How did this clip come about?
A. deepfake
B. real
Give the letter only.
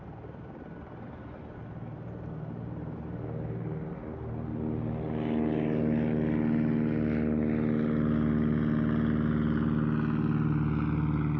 B